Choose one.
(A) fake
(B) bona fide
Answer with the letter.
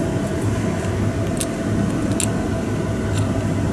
B